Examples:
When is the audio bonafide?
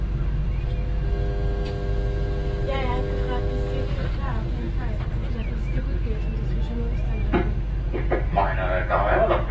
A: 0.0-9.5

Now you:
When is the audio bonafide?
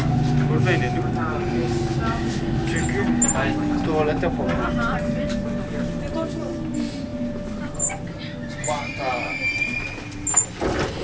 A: 0.0-11.0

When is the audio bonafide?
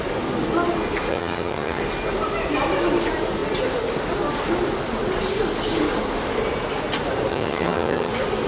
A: 0.0-1.1; 1.8-7.3; 8.1-8.5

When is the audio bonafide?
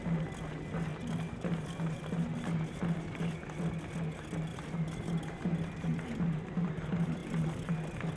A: 0.0-0.9; 2.0-4.5; 6.7-7.2; 7.7-8.2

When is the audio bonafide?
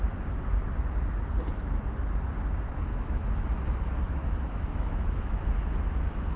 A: 0.0-2.9; 3.4-4.2; 6.0-6.4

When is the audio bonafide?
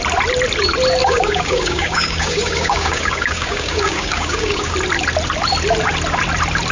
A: 0.0-1.0; 4.7-6.7